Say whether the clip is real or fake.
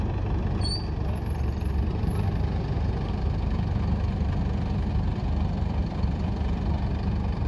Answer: fake